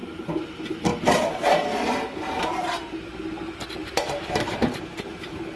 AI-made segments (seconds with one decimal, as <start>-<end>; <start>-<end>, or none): 0.0-0.5; 0.9-3.1; 3.8-5.6